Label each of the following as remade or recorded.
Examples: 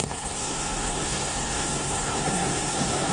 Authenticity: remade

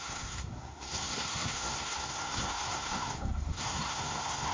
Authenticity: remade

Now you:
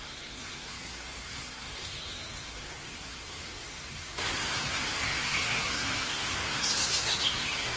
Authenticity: remade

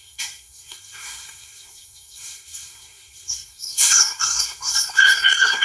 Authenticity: remade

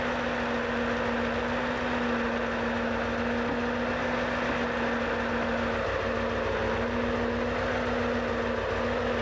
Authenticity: recorded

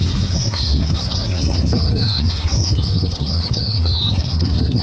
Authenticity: remade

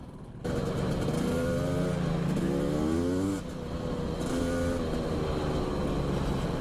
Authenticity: recorded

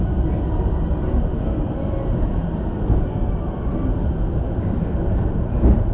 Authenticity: recorded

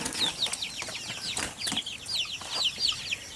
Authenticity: recorded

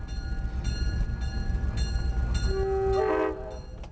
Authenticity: recorded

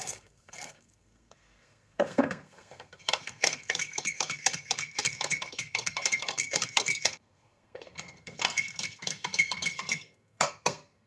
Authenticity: remade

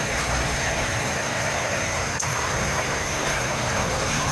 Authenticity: remade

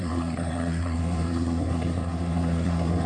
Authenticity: remade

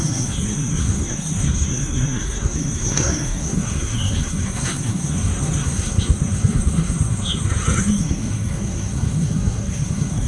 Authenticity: remade